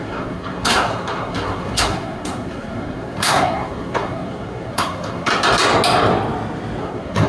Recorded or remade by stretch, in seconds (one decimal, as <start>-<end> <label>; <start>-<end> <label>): 0.0-5.3 remade; 5.3-6.8 recorded; 6.8-7.3 remade